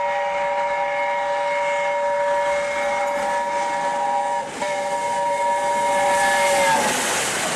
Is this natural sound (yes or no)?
yes